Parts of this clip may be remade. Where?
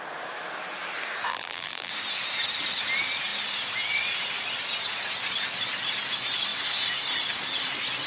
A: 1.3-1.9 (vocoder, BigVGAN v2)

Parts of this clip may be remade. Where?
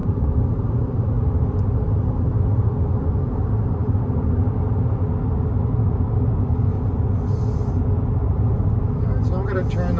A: 0.0-1.0 (vocoder, BigVGAN v2)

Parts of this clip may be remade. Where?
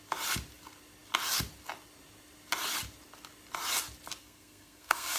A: 4.2-5.2 (codec, SNAC)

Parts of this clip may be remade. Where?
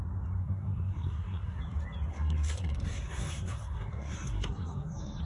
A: 0.4-1.6 (codec, SNAC); 2.1-5.2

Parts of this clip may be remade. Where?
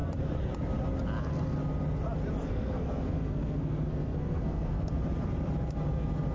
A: 2.4-4.9 (codec, SNAC)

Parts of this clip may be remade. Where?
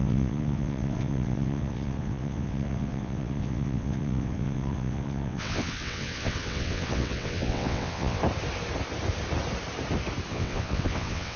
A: 0.0-8.2 (vocoder, WaveNeXt); 10.3-11.4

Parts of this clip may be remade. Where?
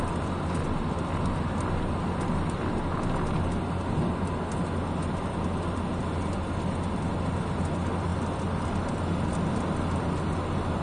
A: 8.1-8.9 (vocoder, BigVGAN v2)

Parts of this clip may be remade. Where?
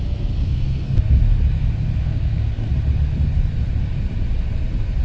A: 0.4-1.0 (codec, SNAC); 2.0-2.7